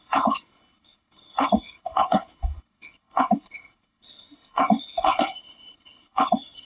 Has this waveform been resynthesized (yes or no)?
yes